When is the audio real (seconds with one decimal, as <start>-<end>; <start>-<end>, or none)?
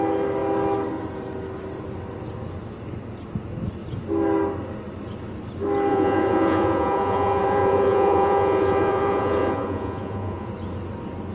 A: 0.0-5.9; 10.5-11.3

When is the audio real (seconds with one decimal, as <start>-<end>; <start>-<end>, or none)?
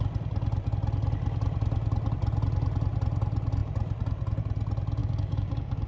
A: 0.0-5.0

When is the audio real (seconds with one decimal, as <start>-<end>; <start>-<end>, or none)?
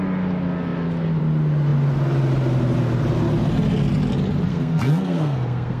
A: 0.0-4.5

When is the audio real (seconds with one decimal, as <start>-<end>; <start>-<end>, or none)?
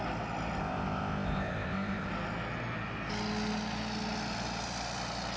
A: 0.0-0.6; 2.1-5.4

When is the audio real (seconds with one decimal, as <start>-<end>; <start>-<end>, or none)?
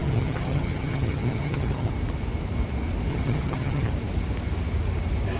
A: 1.9-3.1; 3.9-5.4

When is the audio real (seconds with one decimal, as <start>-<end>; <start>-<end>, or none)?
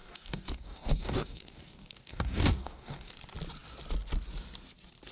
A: 3.1-5.1